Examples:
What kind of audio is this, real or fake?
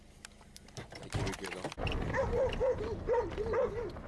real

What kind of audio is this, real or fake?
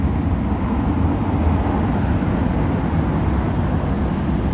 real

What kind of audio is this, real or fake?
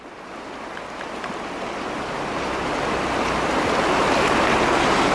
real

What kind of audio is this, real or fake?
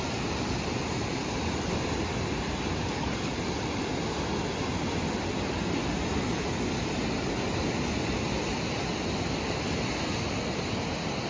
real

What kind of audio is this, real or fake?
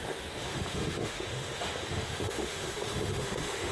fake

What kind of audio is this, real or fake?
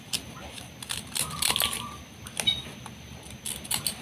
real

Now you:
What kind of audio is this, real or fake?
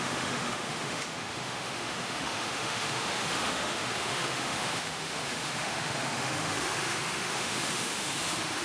fake